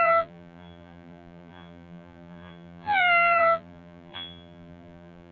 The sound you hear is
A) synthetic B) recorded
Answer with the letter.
A